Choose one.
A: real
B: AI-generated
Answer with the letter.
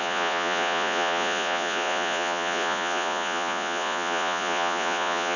B